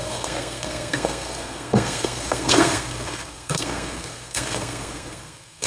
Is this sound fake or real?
fake